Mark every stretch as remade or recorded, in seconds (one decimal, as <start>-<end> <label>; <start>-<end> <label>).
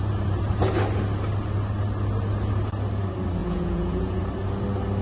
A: 0.0-3.4 recorded; 3.4-4.2 remade; 4.2-5.0 recorded